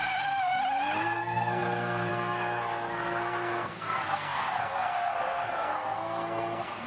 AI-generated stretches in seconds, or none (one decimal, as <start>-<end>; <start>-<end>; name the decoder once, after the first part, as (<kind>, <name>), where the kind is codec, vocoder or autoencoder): 1.0-6.9 (codec, SNAC)